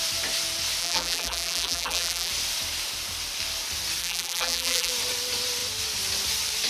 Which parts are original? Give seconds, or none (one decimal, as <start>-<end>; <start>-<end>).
0.0-0.8; 2.3-4.0; 4.9-6.7